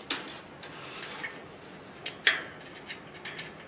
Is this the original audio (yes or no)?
yes